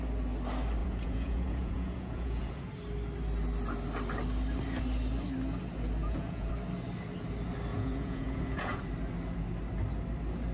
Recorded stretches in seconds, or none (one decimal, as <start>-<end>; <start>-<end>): 0.0-0.8; 2.7-6.0; 6.5-7.7; 8.8-10.5